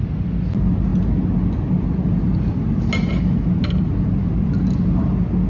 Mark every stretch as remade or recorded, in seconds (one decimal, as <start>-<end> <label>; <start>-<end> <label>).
0.0-5.5 recorded